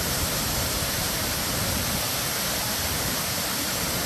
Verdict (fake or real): fake